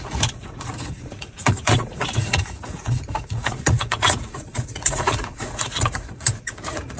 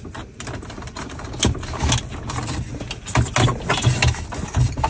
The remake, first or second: first